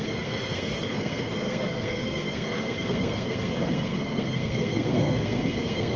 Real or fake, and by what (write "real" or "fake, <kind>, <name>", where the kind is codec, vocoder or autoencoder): fake, codec, SNAC